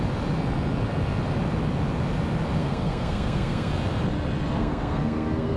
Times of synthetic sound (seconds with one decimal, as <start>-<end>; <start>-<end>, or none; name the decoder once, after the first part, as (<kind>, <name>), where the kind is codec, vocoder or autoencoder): 2.6-3.7 (codec, SNAC); 4.6-5.6